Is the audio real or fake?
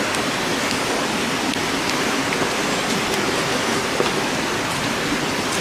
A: real